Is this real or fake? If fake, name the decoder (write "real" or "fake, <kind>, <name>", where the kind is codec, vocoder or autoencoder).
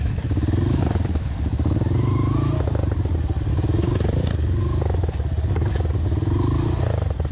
real